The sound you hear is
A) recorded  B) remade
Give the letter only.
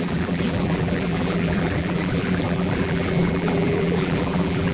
B